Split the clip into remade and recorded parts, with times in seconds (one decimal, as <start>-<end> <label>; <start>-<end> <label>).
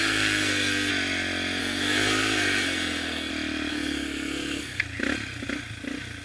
0.0-0.9 remade; 0.9-1.6 recorded; 1.6-3.3 remade; 3.3-3.7 recorded; 3.7-4.8 remade; 4.8-6.2 recorded